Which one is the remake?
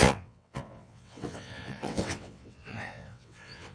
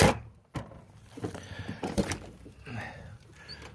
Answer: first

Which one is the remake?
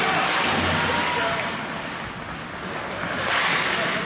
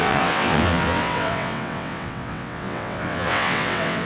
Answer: second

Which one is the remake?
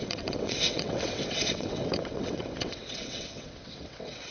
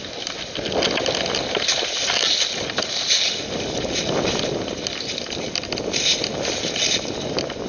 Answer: first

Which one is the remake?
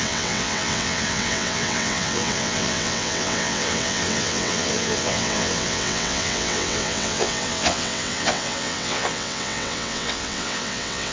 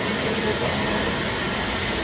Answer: first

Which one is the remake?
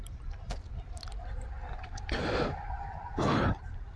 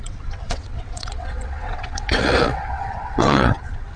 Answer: second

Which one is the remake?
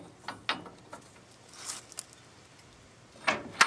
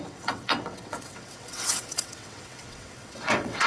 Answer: second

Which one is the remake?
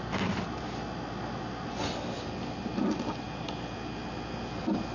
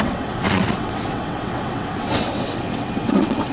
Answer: second